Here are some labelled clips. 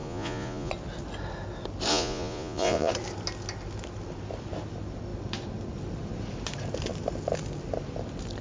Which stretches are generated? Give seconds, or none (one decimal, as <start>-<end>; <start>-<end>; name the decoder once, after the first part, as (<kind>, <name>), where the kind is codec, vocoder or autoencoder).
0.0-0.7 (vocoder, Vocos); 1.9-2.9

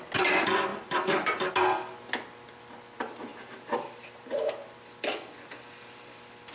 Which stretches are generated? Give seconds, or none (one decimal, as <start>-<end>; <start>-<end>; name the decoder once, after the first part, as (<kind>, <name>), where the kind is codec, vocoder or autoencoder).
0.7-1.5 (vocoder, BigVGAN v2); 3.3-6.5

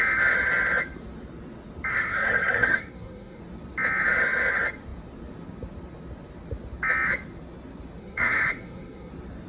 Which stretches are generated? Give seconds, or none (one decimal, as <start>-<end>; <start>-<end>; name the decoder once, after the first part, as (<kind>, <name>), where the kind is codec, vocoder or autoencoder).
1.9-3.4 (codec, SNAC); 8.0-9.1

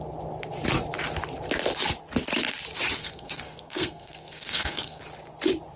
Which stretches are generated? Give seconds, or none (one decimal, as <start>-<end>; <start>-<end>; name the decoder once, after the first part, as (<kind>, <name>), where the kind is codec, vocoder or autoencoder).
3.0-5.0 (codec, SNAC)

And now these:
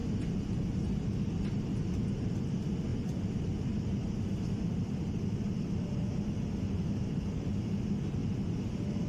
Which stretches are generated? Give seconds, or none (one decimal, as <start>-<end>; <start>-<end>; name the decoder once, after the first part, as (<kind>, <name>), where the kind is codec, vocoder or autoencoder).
none

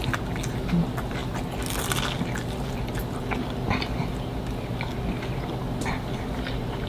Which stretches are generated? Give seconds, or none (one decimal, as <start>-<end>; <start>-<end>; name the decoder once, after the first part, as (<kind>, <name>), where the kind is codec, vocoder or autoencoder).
none

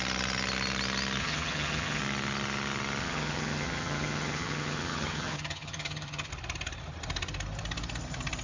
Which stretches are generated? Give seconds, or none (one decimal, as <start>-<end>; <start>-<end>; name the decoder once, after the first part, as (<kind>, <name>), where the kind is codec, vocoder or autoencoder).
1.2-2.0 (vocoder, HiFi-GAN); 3.0-6.3